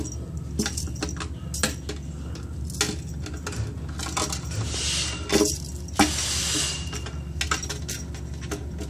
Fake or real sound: real